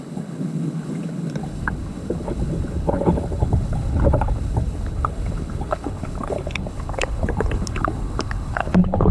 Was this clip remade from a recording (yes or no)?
yes